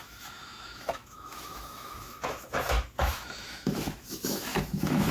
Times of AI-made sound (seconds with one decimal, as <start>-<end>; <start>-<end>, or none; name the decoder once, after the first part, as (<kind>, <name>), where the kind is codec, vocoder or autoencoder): 0.0-5.1 (autoencoder, DAC-VAE)